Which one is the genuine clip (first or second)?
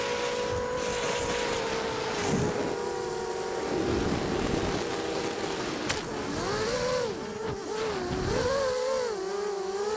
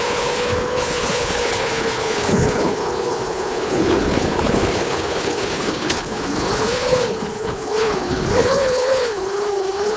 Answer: first